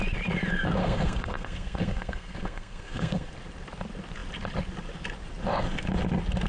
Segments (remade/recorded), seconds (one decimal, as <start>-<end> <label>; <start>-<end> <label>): 0.0-0.8 recorded; 0.8-3.3 remade; 3.3-6.5 recorded